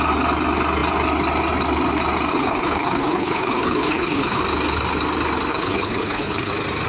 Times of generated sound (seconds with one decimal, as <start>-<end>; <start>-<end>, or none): 2.3-4.4; 5.5-6.5